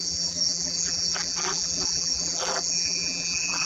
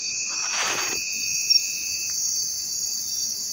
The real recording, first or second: second